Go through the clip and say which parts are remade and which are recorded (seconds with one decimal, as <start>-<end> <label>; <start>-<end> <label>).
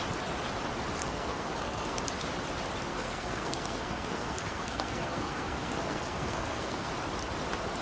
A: 0.0-1.0 recorded; 1.0-2.0 remade; 2.0-2.9 recorded; 2.9-6.9 remade; 6.9-7.8 recorded